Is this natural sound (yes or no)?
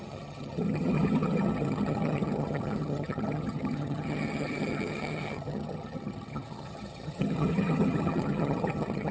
no